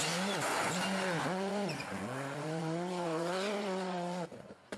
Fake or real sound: fake